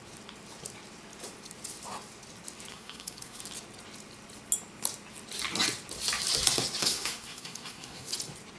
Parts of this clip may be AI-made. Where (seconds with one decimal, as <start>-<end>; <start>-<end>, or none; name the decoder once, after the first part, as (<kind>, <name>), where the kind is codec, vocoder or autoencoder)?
2.7-3.4 (codec, SNAC); 6.8-8.1